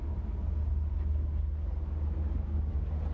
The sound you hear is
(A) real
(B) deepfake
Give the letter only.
A